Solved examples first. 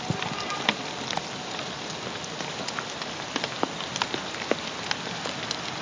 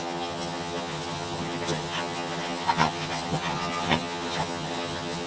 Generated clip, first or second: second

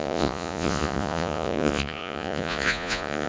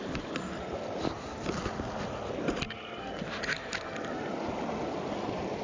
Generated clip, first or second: first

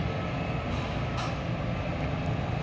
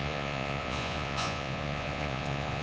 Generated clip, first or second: second